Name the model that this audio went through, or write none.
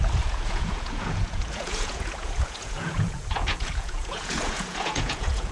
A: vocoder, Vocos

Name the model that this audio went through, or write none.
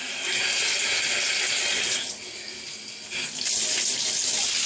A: none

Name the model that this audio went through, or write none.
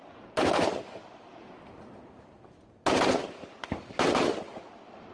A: none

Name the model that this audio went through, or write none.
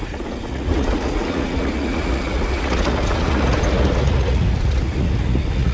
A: vocoder, Vocos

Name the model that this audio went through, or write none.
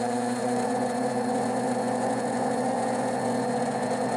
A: vocoder, Vocos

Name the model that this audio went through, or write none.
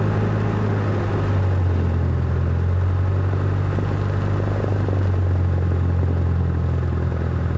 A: none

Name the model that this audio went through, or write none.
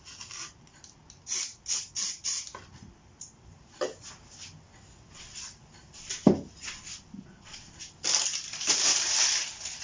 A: none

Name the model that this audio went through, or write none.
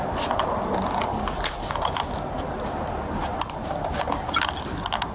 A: none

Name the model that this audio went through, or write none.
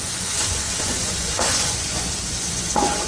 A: vocoder, Vocos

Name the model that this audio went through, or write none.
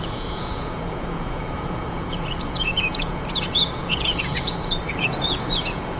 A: vocoder, Vocos